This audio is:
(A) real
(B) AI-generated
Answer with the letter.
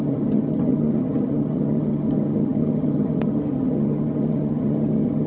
B